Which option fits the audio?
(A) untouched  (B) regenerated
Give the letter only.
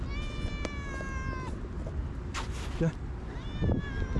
A